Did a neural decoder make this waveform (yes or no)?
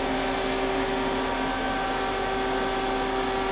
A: no